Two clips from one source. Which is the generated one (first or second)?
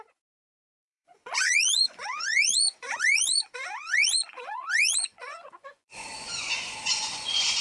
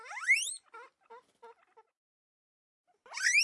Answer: first